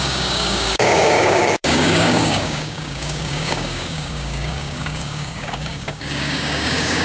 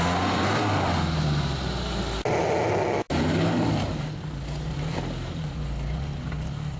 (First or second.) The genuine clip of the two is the second